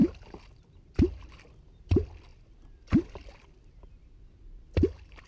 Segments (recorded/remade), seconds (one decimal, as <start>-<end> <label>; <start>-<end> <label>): 0.0-2.3 recorded; 2.3-3.7 remade; 3.7-5.3 recorded